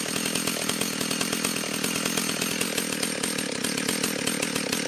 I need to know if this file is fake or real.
real